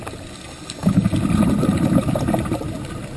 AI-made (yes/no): no